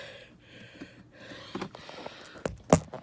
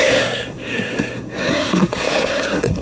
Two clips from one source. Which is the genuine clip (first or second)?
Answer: first